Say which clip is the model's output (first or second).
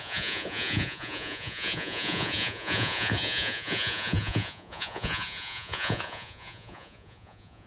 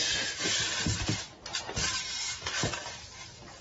first